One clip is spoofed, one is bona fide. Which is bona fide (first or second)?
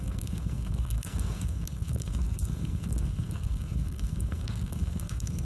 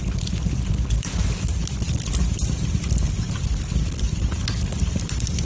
second